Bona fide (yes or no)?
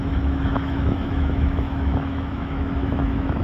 no